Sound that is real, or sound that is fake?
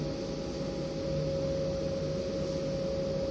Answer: real